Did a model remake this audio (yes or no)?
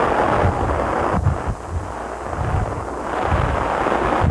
no